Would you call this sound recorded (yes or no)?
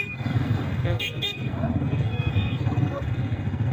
no